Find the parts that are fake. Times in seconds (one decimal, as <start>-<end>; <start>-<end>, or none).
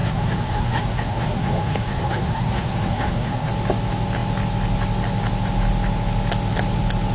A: 0.0-3.5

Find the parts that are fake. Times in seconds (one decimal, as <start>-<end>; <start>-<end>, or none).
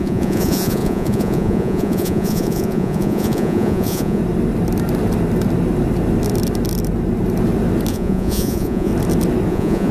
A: 0.0-4.2; 7.9-8.9; 9.5-9.9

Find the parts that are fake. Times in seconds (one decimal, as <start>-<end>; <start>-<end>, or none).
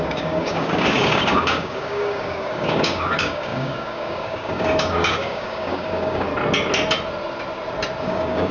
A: 0.0-6.3; 8.0-8.5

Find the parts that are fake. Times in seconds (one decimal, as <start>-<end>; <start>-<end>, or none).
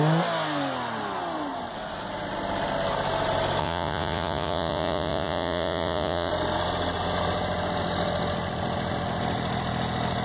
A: 3.6-6.3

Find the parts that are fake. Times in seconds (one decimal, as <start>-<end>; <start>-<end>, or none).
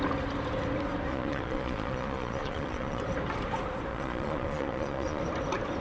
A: 1.1-3.0; 3.9-5.2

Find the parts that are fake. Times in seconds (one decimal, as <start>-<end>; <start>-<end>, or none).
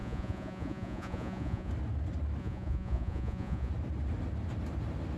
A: 0.0-1.7; 2.4-3.7